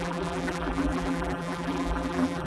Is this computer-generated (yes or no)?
yes